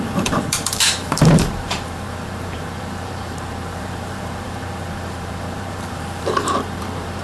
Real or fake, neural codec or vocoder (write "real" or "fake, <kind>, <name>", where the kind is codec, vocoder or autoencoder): fake, vocoder, BigVGAN v2